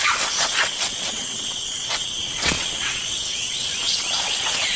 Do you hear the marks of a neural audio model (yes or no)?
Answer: yes